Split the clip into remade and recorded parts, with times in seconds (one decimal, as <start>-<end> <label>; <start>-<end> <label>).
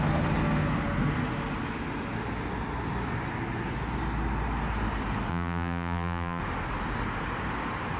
0.0-5.3 recorded; 5.3-6.4 remade; 6.4-8.0 recorded